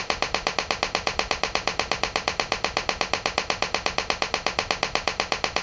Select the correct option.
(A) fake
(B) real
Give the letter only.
B